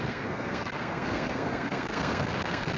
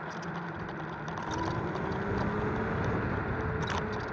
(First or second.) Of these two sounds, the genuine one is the second